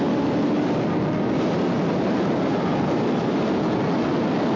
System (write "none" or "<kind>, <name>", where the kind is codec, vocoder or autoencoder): none